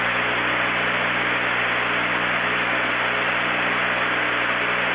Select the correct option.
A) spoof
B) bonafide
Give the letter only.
A